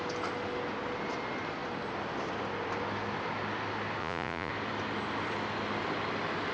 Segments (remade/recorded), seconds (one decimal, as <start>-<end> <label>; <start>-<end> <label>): 0.0-4.0 recorded; 4.0-4.5 remade; 4.5-6.5 recorded